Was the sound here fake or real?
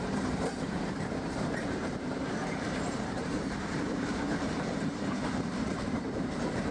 fake